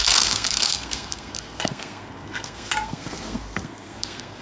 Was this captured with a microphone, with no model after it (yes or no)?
no